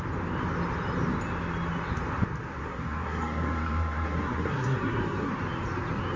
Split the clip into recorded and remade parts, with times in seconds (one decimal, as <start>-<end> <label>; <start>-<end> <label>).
0.0-2.6 recorded; 2.6-5.3 remade; 5.3-6.2 recorded